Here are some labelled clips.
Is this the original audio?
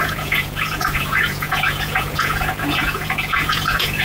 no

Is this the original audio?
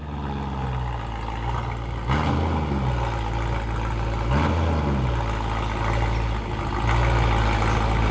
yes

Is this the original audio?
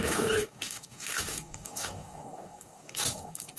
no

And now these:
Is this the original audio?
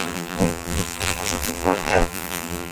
no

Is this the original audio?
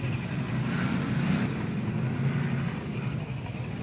yes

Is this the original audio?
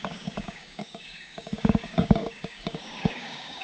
no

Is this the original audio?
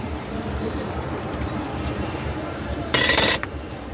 no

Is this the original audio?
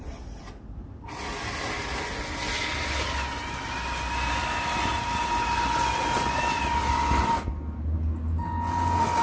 yes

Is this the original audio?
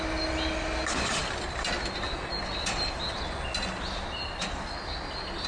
yes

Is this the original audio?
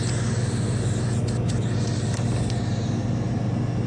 yes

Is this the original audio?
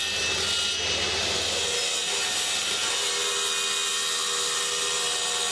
yes